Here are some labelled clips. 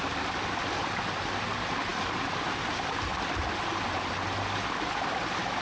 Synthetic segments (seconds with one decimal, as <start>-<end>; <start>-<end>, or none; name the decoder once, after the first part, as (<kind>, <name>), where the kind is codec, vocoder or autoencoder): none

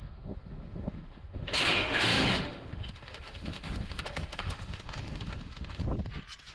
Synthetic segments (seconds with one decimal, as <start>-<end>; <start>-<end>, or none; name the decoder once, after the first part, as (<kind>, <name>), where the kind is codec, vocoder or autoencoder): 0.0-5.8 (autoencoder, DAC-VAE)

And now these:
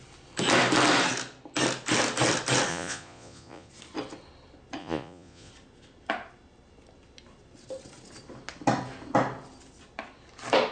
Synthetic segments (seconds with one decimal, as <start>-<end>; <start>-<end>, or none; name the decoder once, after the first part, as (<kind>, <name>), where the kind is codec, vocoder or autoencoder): 2.7-3.7 (vocoder, Vocos); 4.8-5.5

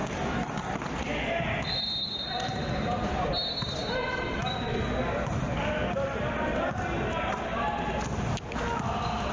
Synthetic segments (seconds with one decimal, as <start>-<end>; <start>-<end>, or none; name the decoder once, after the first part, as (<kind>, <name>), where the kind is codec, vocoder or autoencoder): none